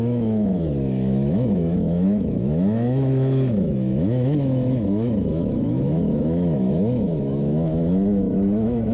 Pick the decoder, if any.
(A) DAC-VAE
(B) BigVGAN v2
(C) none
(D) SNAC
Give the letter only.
A